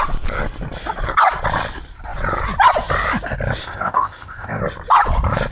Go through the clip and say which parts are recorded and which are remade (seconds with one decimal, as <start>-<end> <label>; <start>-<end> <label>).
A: 0.0-3.6 recorded; 3.6-4.6 remade; 4.6-5.5 recorded